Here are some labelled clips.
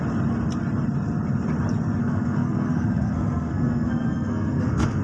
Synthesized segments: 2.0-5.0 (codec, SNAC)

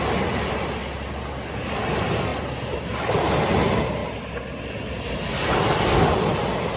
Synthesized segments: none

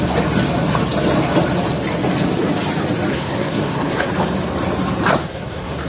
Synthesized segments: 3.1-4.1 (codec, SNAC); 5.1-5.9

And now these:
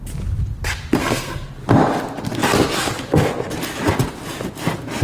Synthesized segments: 1.0-1.5 (codec, SNAC)

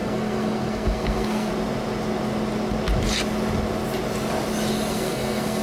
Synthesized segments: 0.0-1.5 (codec, SNAC); 4.9-5.6

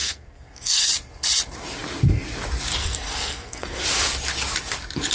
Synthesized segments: 0.0-0.9 (codec, SNAC); 2.8-3.8

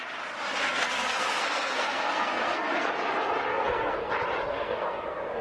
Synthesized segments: 0.6-2.9 (codec, SNAC); 3.5-4.1; 4.5-5.4